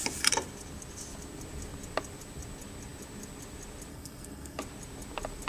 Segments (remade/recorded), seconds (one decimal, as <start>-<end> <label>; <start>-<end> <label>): 0.0-3.9 recorded; 3.9-4.6 remade; 4.6-5.5 recorded